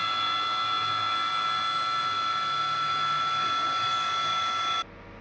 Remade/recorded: recorded